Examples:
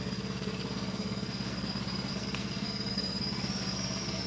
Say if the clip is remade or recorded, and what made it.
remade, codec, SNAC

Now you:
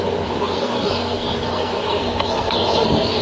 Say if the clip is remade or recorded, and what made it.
remade, codec, SNAC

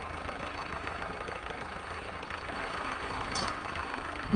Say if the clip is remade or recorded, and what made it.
remade, codec, SNAC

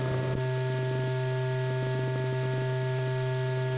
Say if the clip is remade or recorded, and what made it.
recorded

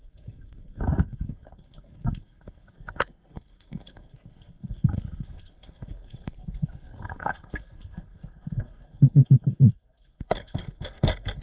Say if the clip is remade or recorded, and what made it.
remade, codec, SNAC